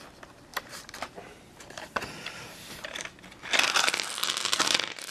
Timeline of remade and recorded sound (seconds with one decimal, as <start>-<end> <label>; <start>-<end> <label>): 0.0-0.5 recorded; 0.5-3.0 remade; 3.0-5.1 recorded